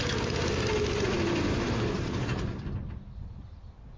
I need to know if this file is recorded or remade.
recorded